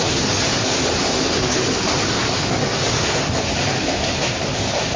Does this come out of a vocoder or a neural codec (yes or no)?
no